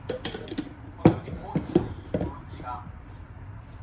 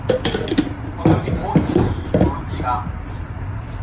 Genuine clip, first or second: second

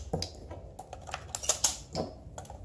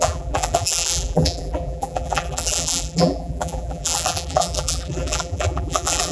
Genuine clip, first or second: first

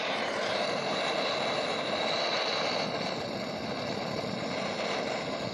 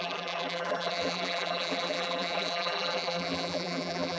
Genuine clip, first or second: first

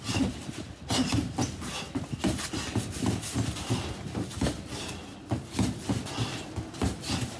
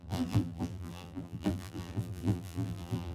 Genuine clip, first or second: first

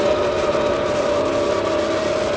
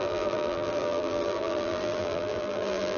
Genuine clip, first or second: first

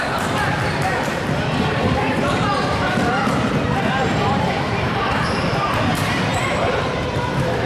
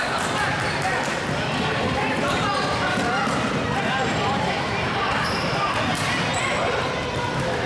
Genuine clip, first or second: second